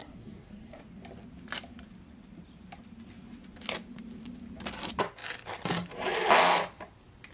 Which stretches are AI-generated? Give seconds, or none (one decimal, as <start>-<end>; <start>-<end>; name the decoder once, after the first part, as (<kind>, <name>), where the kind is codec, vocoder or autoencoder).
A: 0.0-0.9 (codec, SNAC)